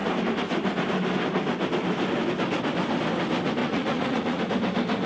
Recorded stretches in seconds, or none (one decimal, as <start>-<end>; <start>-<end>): 0.0-3.6; 4.4-5.1

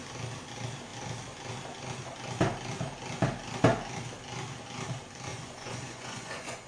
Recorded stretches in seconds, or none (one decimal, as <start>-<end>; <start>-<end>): 0.0-5.3

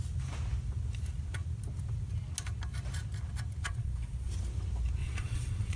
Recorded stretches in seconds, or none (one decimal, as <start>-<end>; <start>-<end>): 0.0-3.6; 4.3-5.0

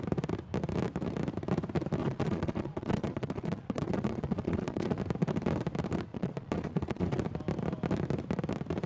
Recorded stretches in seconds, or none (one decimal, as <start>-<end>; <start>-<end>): 0.0-2.0; 5.0-6.1; 7.2-8.9

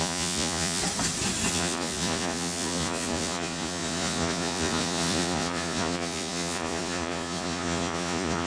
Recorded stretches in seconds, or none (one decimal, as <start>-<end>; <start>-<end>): 0.8-1.5